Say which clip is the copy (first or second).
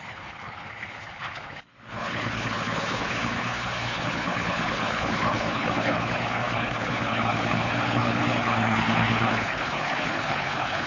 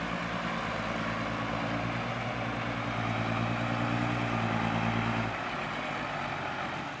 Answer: first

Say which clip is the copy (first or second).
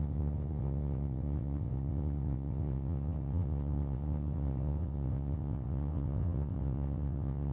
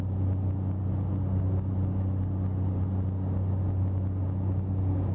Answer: first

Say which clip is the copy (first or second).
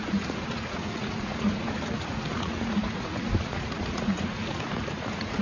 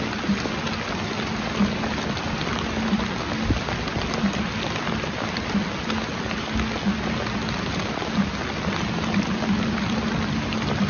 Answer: first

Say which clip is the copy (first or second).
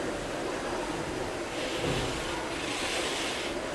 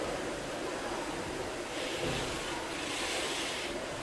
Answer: second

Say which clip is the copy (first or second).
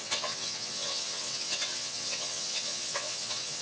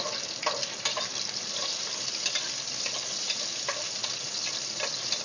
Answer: first